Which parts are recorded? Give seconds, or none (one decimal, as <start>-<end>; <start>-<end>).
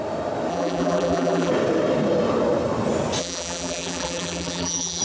0.0-0.5; 1.5-3.2